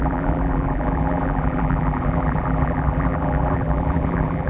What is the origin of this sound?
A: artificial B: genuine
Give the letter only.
A